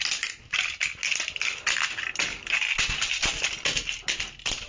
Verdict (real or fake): real